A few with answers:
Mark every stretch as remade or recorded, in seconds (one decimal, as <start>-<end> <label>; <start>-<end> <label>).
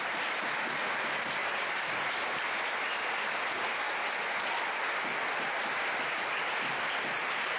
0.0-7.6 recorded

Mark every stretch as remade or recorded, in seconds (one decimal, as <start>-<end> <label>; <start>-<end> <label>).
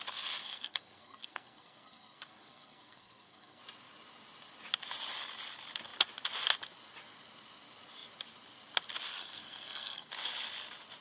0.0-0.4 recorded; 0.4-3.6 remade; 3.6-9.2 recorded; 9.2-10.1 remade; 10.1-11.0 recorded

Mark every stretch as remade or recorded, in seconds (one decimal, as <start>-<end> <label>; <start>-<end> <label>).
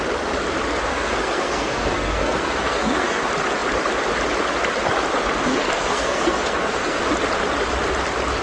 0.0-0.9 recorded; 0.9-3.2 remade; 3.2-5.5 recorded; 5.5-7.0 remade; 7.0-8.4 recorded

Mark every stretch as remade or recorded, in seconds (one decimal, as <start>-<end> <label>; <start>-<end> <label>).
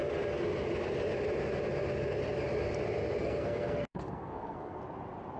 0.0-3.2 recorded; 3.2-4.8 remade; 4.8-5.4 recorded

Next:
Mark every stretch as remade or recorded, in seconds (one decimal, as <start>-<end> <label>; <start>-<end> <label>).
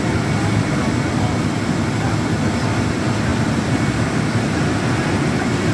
0.0-5.7 recorded